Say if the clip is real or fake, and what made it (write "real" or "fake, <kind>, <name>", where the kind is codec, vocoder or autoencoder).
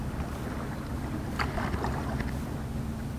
real